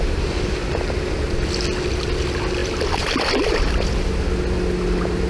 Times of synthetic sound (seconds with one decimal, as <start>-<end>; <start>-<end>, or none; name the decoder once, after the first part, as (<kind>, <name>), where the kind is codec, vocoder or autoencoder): 2.6-4.1 (vocoder, BigVGAN v2)

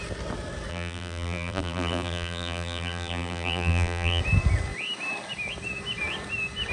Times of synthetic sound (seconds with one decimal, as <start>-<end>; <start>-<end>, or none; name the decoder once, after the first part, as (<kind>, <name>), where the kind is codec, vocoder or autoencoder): 0.7-4.2 (vocoder, BigVGAN v2)

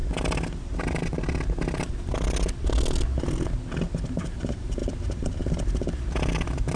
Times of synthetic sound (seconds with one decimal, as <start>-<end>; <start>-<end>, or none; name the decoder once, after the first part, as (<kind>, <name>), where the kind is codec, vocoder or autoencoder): 4.1-4.8 (vocoder, BigVGAN v2)

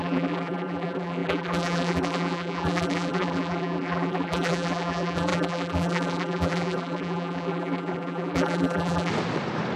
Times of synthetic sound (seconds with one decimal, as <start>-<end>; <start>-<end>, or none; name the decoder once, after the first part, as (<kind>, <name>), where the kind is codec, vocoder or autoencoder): 0.0-9.1 (vocoder, BigVGAN v2)

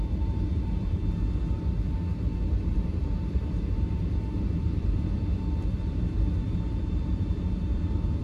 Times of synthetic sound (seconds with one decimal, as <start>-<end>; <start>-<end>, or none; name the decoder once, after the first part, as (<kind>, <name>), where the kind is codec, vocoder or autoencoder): 0.0-1.0 (vocoder, BigVGAN v2); 2.5-5.2; 5.8-8.2

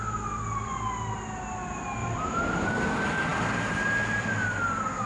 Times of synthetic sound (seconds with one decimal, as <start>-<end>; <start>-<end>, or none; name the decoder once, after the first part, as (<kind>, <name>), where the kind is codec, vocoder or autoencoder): 2.0-2.8 (vocoder, BigVGAN v2)

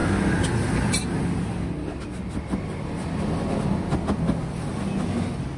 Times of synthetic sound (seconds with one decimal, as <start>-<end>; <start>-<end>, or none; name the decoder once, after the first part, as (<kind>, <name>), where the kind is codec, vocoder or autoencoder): none